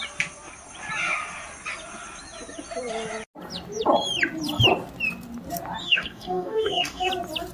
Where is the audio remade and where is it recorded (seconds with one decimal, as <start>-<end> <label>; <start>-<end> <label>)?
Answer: 0.0-5.8 recorded; 5.8-7.1 remade; 7.1-7.5 recorded